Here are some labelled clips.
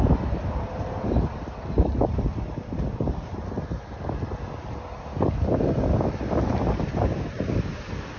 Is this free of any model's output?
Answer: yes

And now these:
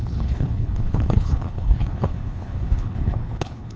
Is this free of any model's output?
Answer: no